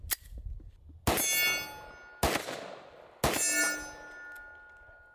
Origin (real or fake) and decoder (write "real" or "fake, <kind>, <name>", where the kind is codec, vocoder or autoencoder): real